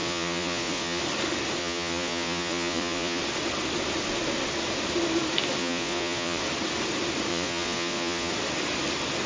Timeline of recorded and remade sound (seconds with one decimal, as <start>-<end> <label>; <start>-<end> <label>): 0.0-1.0 remade; 1.0-1.6 recorded; 1.6-3.2 remade; 3.2-5.6 recorded; 5.6-6.4 remade; 6.4-7.3 recorded; 7.3-8.3 remade; 8.3-9.3 recorded